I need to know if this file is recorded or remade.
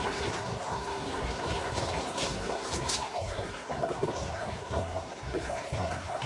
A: remade